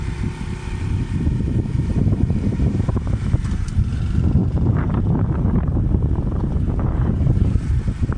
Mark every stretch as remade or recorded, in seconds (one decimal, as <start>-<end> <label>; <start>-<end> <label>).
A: 0.0-1.9 recorded; 1.9-3.4 remade; 3.4-4.4 recorded; 4.4-7.7 remade; 7.7-8.2 recorded